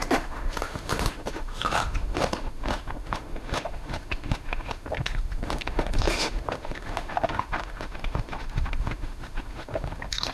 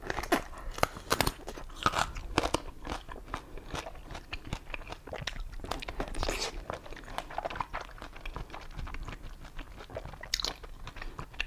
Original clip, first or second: second